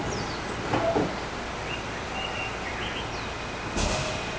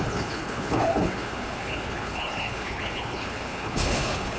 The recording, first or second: first